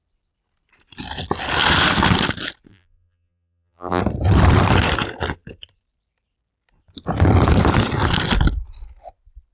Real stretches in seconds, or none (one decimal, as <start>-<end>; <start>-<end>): 0.0-2.7; 4.0-9.5